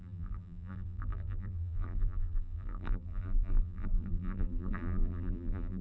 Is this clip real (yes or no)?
no